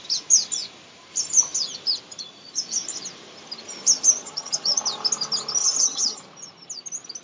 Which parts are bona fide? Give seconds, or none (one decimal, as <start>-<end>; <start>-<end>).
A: 0.0-4.2; 4.8-5.6; 6.3-7.2